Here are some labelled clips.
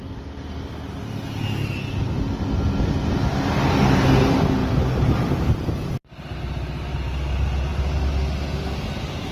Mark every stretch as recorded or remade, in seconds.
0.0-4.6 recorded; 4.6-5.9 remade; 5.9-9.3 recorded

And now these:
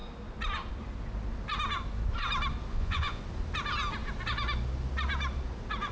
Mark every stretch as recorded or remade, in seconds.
0.0-2.7 recorded; 2.7-3.2 remade; 3.2-5.9 recorded

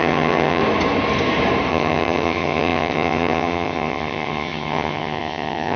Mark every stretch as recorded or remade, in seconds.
0.0-0.6 remade; 0.6-1.7 recorded; 1.7-5.8 remade

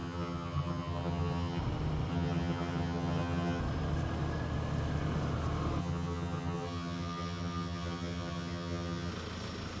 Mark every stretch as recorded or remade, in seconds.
0.0-1.6 remade; 1.6-2.1 recorded; 2.1-3.6 remade; 3.6-5.8 recorded; 5.8-9.1 remade; 9.1-9.8 recorded

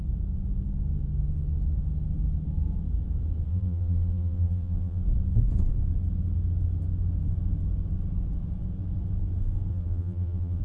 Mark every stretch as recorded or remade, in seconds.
0.0-3.5 recorded; 3.5-5.0 remade; 5.0-9.7 recorded; 9.7-10.6 remade